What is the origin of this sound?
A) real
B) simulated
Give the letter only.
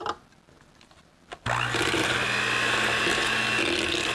A